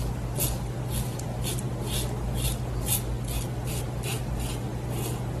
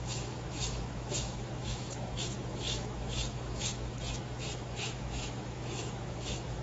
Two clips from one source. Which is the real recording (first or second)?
first